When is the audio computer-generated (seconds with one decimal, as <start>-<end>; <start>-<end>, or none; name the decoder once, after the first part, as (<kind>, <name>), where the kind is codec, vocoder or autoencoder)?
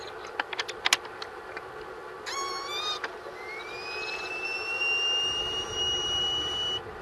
none